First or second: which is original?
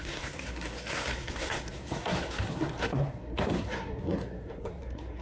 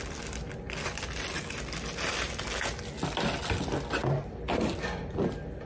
second